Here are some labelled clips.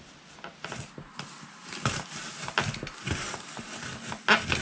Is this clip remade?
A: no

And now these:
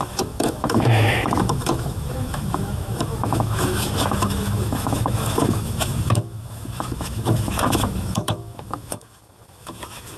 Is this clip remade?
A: yes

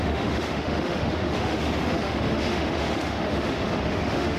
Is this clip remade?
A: yes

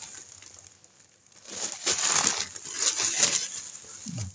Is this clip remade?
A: no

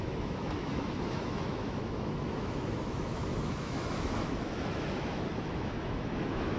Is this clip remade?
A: yes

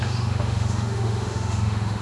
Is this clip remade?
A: yes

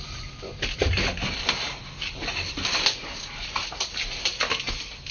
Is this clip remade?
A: no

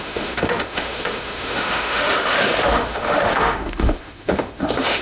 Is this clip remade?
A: yes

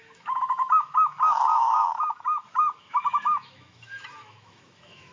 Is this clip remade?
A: yes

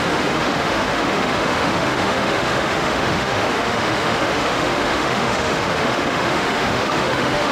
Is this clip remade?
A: yes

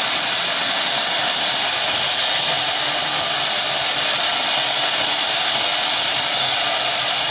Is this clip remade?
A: no